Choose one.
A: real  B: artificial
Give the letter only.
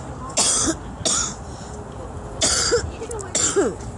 A